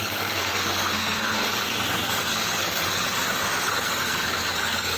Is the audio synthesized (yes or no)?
yes